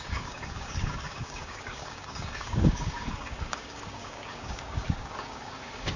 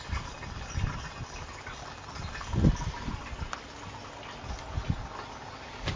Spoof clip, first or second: first